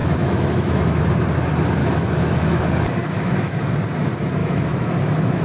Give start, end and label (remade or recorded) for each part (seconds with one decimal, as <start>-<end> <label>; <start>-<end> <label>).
0.0-1.0 remade; 1.0-1.8 recorded; 1.8-2.6 remade; 2.6-3.0 recorded; 3.0-3.6 remade; 3.6-4.4 recorded; 4.4-4.9 remade; 4.9-5.4 recorded